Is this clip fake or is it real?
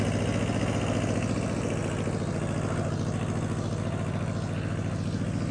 real